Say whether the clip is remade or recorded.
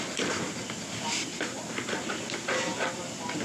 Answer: recorded